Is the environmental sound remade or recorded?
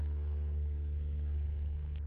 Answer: remade